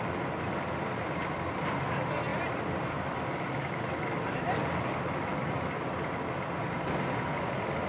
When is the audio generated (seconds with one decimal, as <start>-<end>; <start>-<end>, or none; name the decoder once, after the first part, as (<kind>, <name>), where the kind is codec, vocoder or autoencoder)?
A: none